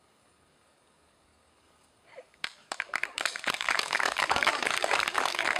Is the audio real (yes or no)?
no